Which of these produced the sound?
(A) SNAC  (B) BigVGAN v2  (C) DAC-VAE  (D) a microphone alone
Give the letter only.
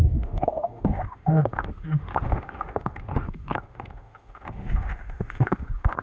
C